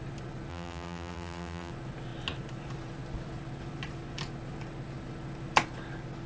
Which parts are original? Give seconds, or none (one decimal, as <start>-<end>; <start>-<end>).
0.0-0.5; 1.7-6.3